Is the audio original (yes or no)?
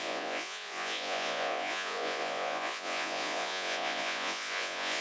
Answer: no